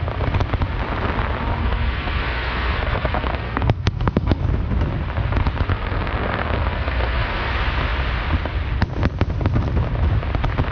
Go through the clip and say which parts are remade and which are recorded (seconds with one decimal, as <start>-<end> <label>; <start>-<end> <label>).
0.0-1.6 recorded; 1.6-4.4 remade; 4.4-5.7 recorded; 5.7-7.5 remade; 7.5-10.7 recorded